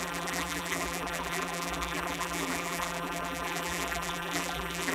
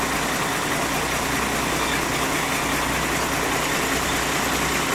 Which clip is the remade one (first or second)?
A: first